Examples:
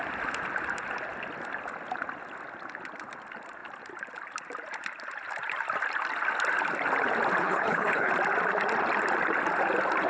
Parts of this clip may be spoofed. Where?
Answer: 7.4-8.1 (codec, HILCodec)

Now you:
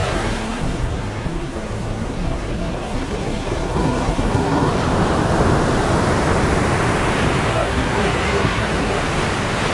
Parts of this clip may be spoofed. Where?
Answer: 0.0-4.7 (codec, SNAC); 7.5-9.0

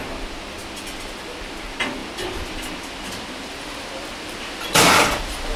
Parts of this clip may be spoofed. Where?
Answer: none

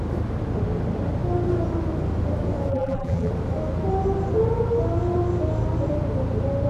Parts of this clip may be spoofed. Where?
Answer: 2.7-3.3 (vocoder, BigVGAN v2)